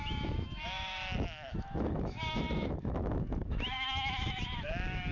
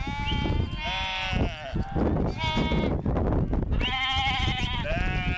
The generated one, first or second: first